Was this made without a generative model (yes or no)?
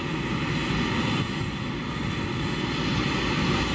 yes